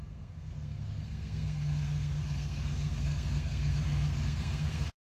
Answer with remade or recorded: remade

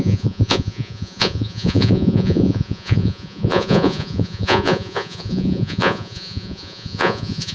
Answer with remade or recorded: remade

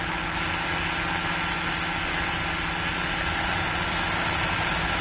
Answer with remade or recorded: recorded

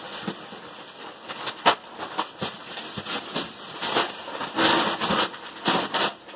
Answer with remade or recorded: recorded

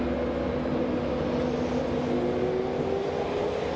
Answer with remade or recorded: recorded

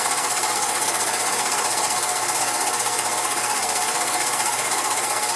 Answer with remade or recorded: remade